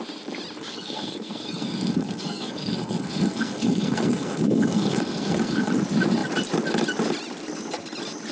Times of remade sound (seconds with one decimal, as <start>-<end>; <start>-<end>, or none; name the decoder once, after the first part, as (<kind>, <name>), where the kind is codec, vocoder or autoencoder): 0.7-5.7 (codec, SNAC)